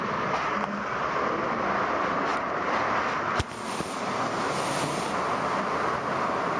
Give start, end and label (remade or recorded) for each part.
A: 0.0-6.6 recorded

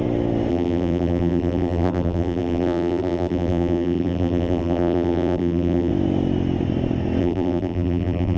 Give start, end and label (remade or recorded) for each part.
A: 0.0-0.5 recorded; 0.5-5.9 remade; 5.9-7.2 recorded; 7.2-8.4 remade

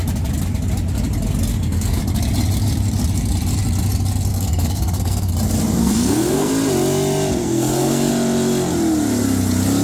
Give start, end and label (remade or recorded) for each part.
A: 0.0-1.5 recorded; 1.5-2.0 remade; 2.0-4.3 recorded; 4.3-5.3 remade; 5.3-5.8 recorded; 5.8-6.5 remade; 6.5-7.4 recorded; 7.4-8.1 remade; 8.1-9.8 recorded

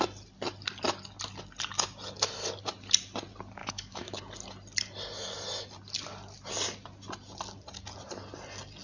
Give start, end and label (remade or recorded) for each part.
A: 0.0-3.6 recorded; 3.6-4.2 remade; 4.2-8.8 recorded

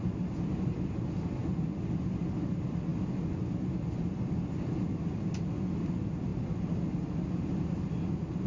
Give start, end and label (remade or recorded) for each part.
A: 0.0-8.5 recorded

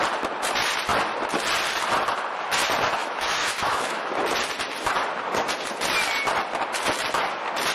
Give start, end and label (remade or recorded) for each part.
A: 0.0-3.0 recorded; 3.0-4.1 remade; 4.1-7.7 recorded